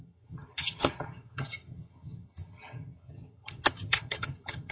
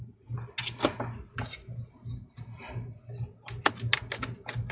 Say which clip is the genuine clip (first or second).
second